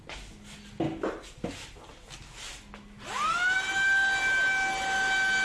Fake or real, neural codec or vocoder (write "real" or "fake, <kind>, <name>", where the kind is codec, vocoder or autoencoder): real